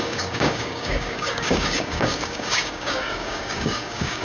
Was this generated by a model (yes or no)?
yes